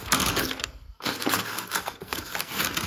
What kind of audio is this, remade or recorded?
remade